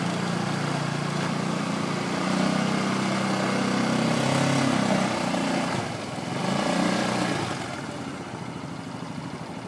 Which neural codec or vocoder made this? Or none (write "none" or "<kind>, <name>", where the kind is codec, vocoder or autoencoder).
none